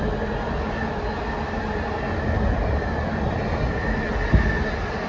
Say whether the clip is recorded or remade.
recorded